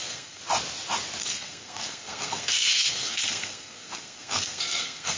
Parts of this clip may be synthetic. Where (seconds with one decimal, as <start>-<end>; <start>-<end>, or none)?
0.0-0.4; 1.2-5.2